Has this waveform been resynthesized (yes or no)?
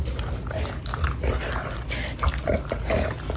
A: no